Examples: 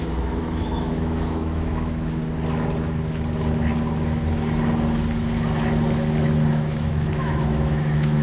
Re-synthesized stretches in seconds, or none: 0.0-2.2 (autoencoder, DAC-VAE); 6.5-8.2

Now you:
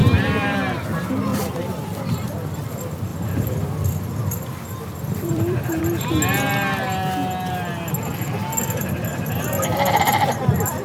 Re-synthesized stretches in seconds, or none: 0.0-0.6 (vocoder, BigVGAN v2); 1.3-2.7; 3.1-5.8

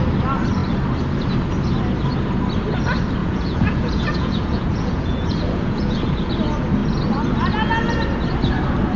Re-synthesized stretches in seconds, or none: 3.2-6.3 (vocoder, Vocos)